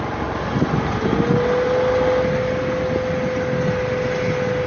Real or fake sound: real